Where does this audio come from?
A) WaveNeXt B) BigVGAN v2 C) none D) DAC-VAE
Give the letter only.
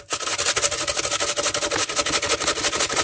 C